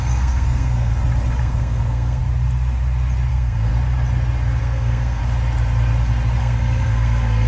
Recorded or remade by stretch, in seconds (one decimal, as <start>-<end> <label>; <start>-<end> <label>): 0.0-0.9 remade; 0.9-1.4 recorded; 1.4-2.2 remade; 2.2-3.3 recorded; 3.3-3.7 remade; 3.7-4.6 recorded; 4.6-5.2 remade; 5.2-6.4 recorded; 6.4-7.5 remade